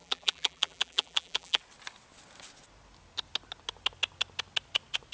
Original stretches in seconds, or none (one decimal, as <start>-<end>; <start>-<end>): 1.6-5.1

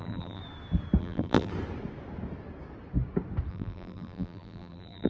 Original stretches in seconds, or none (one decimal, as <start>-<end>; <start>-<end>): 0.4-1.0; 1.5-3.5

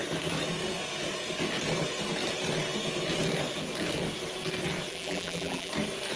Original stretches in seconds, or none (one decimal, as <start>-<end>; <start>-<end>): 0.0-4.9; 5.7-6.2

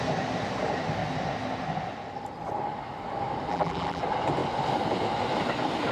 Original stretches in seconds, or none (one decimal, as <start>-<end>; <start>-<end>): 0.0-3.5; 4.0-5.9

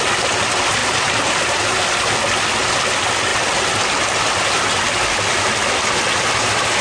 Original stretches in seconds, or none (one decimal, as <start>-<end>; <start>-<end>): 0.0-0.8; 1.8-6.8

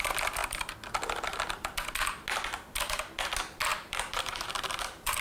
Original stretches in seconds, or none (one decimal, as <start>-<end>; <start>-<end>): 0.0-3.7

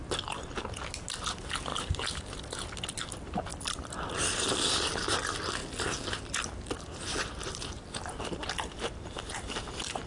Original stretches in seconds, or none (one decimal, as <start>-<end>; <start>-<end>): 0.0-1.7; 2.4-10.1